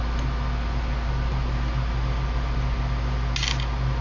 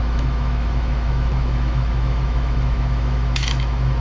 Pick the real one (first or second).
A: first